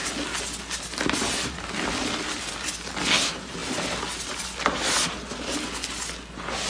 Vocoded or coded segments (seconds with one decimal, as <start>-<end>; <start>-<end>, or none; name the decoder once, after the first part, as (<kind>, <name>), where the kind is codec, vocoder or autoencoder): none